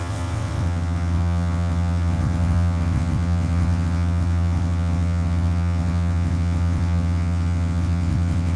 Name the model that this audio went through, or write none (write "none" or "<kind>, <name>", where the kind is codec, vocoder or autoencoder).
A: vocoder, WaveNeXt